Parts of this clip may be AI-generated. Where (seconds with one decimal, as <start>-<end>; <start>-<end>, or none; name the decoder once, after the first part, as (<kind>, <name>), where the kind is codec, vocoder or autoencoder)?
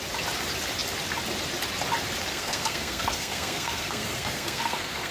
2.3-5.1 (codec, SNAC)